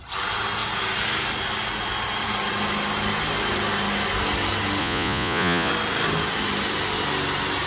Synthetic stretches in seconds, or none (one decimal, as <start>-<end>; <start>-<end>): 4.8-5.7

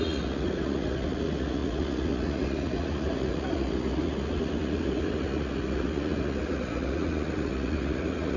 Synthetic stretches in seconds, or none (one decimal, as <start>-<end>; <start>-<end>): 0.0-8.4

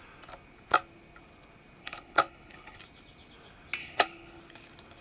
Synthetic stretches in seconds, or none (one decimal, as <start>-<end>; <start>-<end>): 1.8-2.8; 3.8-4.4